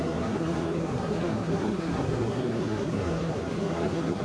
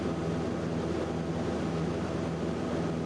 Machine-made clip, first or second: first